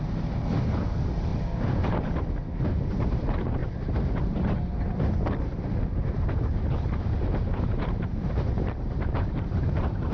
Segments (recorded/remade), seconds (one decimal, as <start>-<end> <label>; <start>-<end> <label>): 0.0-1.3 remade; 1.3-2.6 recorded; 2.6-3.6 remade; 3.6-7.0 recorded; 7.0-10.1 remade